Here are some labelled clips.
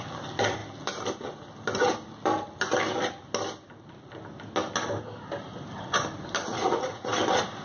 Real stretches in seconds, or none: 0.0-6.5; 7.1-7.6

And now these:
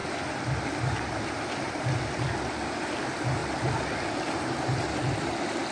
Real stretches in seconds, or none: 0.0-5.7

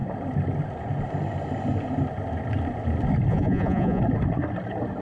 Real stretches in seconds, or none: 0.0-3.3; 4.0-5.0

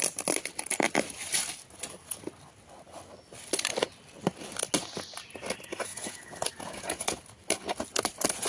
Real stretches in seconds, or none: 0.0-5.9; 7.2-8.5

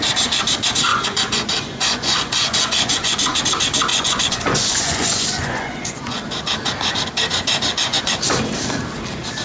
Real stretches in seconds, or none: 0.0-0.9; 3.4-3.9; 6.2-7.7; 8.3-9.4

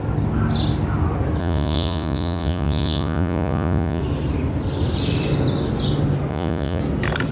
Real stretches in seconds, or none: 0.0-1.4; 4.0-6.3; 6.8-7.3

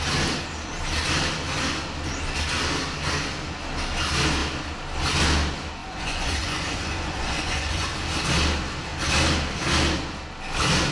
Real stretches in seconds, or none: 0.0-5.8; 7.9-10.9